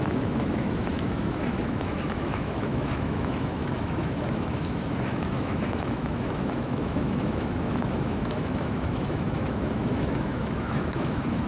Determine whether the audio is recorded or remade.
remade